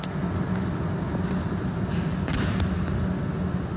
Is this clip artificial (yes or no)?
no